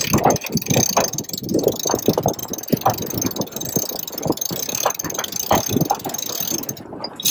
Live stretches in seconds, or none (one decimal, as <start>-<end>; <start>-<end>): 0.0-7.3